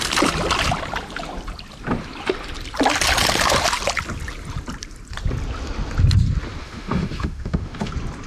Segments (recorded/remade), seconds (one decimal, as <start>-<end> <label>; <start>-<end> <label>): 0.0-6.6 recorded; 6.6-7.9 remade; 7.9-8.3 recorded